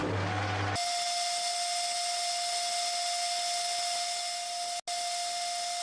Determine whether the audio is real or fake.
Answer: real